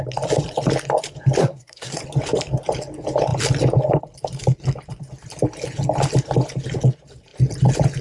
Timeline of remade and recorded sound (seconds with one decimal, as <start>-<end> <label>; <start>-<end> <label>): 0.0-1.4 recorded; 1.4-2.0 remade; 2.0-8.0 recorded